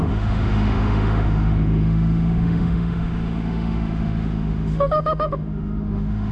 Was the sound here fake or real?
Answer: fake